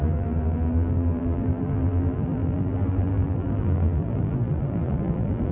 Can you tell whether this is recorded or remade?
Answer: remade